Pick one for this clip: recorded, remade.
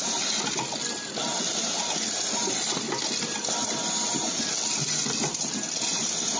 recorded